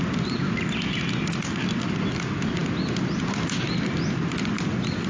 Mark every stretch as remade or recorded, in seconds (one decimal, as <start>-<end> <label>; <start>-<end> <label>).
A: 0.0-5.1 recorded